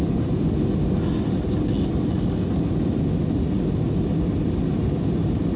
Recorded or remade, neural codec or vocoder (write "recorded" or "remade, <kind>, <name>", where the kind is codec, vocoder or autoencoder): recorded